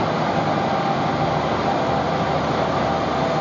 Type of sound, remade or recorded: recorded